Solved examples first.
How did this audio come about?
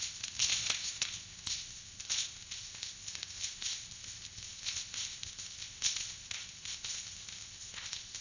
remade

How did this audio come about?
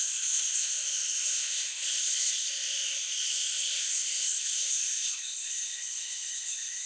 remade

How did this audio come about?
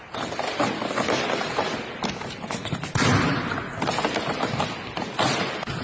recorded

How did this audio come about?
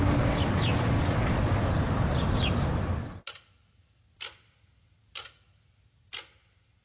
recorded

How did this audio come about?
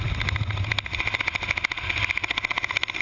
recorded